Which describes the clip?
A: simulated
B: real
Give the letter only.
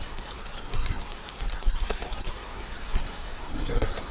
A